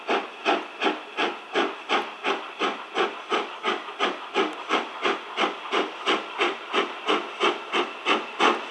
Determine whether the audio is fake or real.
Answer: real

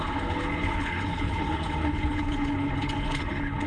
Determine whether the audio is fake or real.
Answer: fake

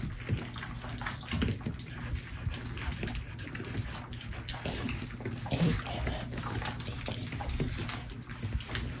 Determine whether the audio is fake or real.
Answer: real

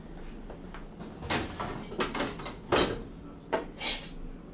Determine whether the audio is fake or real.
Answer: real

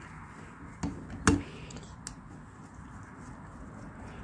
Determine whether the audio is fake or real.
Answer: real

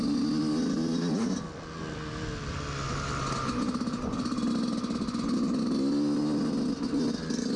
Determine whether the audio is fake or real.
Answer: real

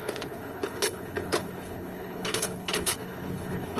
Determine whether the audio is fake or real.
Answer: fake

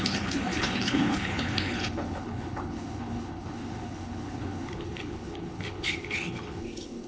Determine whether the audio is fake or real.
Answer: fake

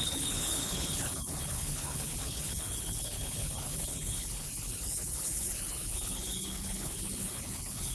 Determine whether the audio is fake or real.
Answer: fake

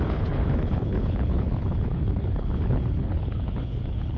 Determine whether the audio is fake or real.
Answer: fake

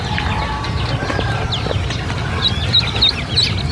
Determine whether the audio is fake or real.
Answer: real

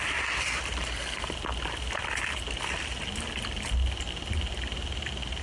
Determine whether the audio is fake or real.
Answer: real